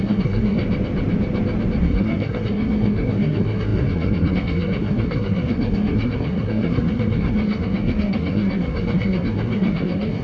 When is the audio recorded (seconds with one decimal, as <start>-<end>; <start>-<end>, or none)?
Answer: 0.6-1.8